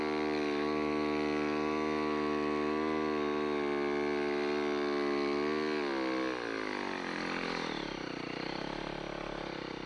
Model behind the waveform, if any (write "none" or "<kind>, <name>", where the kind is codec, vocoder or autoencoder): none